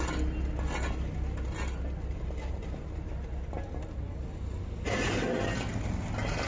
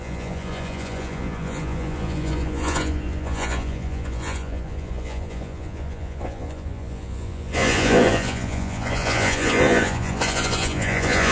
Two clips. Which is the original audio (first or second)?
first